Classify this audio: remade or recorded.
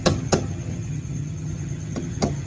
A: remade